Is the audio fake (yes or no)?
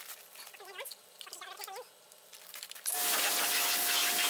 no